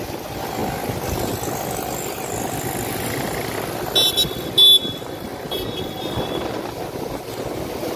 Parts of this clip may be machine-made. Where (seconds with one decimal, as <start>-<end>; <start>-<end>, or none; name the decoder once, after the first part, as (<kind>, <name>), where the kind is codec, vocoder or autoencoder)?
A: none